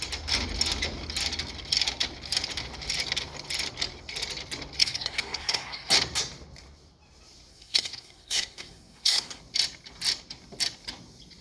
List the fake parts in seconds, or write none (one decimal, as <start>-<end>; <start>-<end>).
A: 4.8-5.9; 7.5-9.4